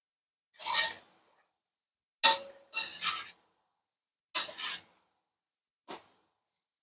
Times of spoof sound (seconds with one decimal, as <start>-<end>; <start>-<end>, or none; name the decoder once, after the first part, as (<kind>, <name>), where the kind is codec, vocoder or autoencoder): 1.3-1.9 (vocoder, BigVGAN v2); 5.7-6.8